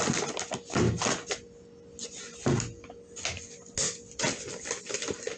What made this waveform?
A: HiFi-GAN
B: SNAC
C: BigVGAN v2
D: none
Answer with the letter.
D